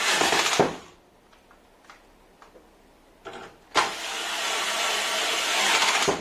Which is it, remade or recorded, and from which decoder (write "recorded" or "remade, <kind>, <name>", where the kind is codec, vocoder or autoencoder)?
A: recorded